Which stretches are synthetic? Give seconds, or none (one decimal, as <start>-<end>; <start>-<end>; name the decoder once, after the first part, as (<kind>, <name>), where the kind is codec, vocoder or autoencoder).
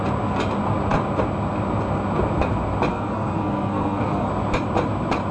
2.9-4.3 (codec, SNAC)